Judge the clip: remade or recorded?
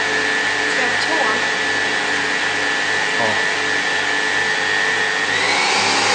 recorded